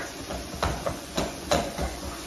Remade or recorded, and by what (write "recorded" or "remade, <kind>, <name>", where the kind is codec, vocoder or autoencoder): remade, vocoder, Vocos